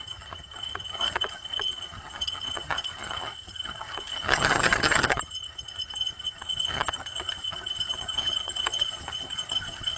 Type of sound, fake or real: fake